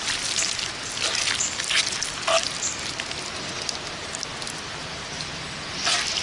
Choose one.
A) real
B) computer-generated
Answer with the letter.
A